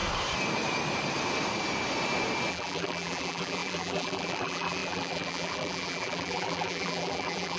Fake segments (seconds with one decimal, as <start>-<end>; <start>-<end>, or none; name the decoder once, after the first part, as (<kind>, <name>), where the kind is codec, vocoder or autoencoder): 2.5-7.6 (vocoder, BigVGAN v2)